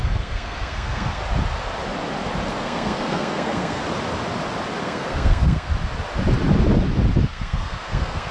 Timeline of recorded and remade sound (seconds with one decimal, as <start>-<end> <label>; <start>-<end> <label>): 0.0-1.2 remade; 1.2-2.5 recorded; 2.5-3.8 remade; 3.8-4.8 recorded; 4.8-5.7 remade; 5.7-7.3 recorded; 7.3-8.3 remade